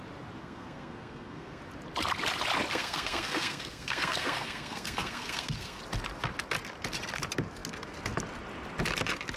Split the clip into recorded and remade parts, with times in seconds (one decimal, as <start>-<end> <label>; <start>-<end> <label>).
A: 0.0-0.4 recorded; 0.4-1.6 remade; 1.6-2.7 recorded; 2.7-5.8 remade; 5.8-9.4 recorded